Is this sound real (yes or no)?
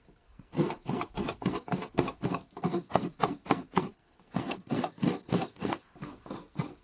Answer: no